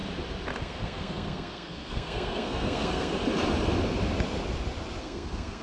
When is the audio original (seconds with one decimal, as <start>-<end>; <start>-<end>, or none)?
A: 0.0-0.6; 3.2-5.0